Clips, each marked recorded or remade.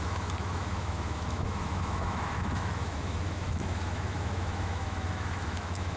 remade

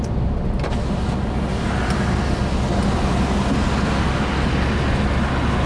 recorded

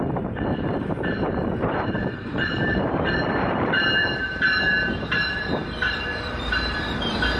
remade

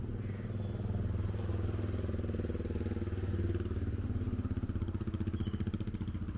recorded